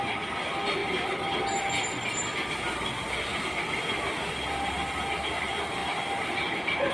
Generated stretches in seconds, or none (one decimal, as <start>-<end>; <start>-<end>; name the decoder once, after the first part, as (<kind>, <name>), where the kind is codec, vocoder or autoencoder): none